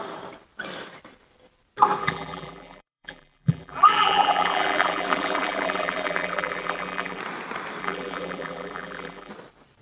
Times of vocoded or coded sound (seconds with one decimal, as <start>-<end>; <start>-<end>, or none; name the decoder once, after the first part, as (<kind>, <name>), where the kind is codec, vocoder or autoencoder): 2.0-7.2 (vocoder, BigVGAN v2); 7.8-9.3